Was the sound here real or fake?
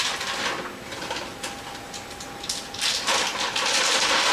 real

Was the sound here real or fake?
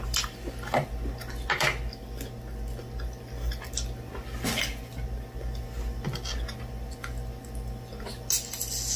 real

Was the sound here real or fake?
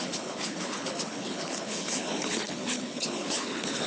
fake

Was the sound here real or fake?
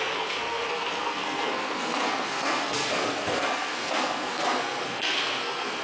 fake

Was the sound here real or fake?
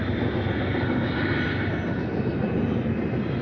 real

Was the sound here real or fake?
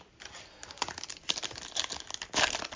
real